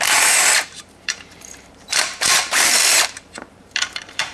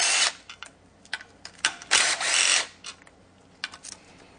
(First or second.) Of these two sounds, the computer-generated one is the first